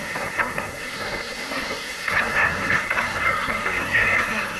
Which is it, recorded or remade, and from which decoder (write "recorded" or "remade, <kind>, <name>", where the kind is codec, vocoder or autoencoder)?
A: remade, codec, SNAC